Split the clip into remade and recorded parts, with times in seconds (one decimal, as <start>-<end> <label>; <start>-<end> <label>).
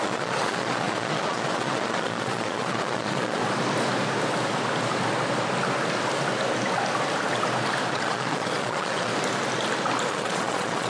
0.0-3.4 remade; 3.4-7.9 recorded; 7.9-9.1 remade; 9.1-10.1 recorded; 10.1-10.9 remade